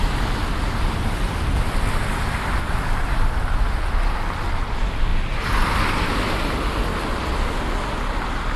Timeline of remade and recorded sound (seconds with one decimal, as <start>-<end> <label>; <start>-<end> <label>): 0.0-8.6 recorded